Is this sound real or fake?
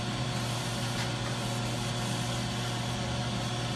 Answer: real